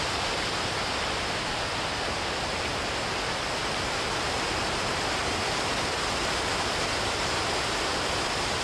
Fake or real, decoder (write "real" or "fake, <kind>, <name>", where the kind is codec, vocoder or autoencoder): real